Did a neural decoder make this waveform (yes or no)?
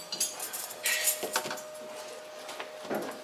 no